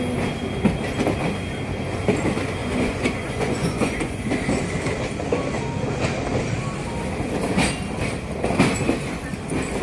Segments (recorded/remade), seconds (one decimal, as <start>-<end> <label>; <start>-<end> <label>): 0.0-2.6 recorded; 2.6-4.3 remade; 4.3-9.8 recorded